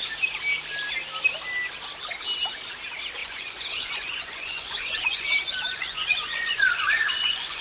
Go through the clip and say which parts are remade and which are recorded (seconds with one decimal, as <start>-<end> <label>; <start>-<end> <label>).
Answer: 0.0-3.2 recorded; 3.2-7.6 remade